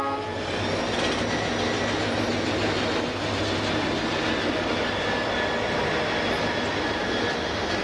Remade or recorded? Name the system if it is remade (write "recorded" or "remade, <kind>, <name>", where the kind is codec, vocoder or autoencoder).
recorded